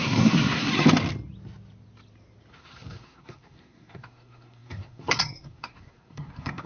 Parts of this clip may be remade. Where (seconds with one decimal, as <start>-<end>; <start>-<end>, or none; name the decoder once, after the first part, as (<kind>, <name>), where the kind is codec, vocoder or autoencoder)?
0.0-0.7 (codec, SNAC); 2.5-6.7